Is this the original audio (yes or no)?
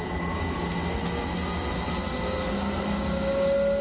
yes